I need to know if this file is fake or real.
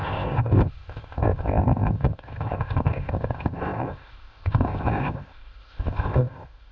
fake